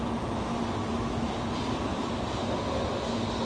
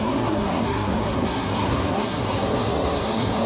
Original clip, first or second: first